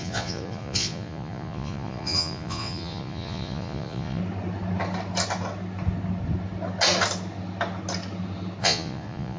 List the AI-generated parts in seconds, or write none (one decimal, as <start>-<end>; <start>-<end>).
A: 0.0-4.2; 8.6-9.4